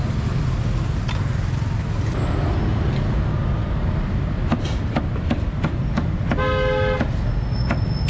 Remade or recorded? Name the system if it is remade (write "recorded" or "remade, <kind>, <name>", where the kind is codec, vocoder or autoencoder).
recorded